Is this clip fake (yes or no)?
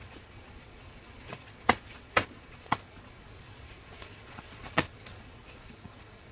yes